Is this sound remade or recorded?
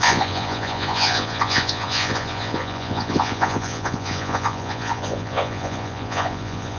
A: remade